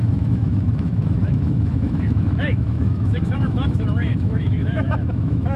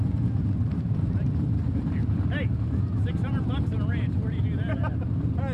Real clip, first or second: second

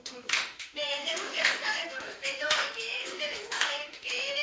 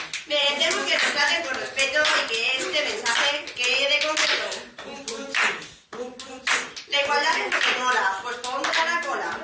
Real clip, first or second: second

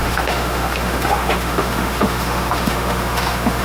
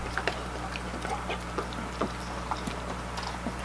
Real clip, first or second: second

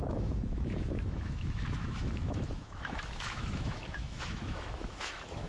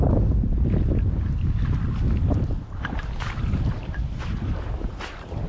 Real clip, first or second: second